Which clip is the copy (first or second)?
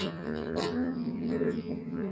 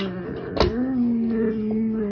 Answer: first